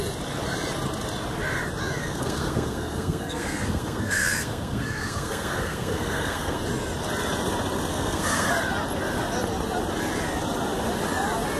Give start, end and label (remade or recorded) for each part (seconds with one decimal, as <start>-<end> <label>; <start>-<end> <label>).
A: 0.0-2.0 recorded; 2.0-6.6 remade; 6.6-7.9 recorded; 7.9-8.5 remade; 8.5-11.6 recorded